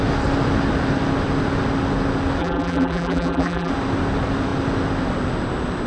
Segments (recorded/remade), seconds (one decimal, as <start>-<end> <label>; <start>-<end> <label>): 0.0-2.4 recorded; 2.4-3.7 remade; 3.7-5.9 recorded